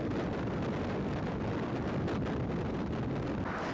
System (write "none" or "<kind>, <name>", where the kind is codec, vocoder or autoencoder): none